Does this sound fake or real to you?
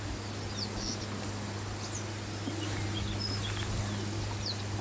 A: real